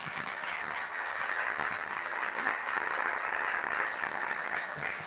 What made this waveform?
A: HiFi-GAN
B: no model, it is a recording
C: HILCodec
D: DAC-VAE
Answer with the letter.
A